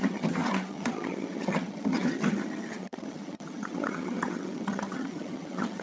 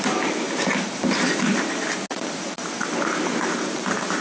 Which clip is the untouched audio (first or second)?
second